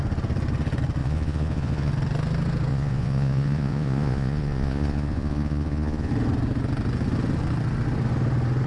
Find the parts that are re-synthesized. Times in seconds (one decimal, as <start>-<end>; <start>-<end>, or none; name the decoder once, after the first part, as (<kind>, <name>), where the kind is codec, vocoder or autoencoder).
1.0-1.9 (vocoder, Vocos); 2.7-6.1